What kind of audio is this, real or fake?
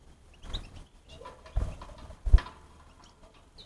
real